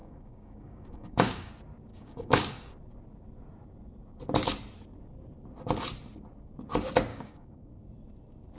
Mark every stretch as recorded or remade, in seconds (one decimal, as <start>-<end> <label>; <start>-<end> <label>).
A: 0.0-1.5 remade; 1.5-1.9 recorded; 1.9-2.7 remade; 2.7-7.1 recorded; 7.1-7.7 remade; 7.7-8.6 recorded